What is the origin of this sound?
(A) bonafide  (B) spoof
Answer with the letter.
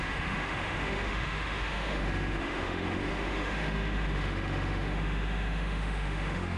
B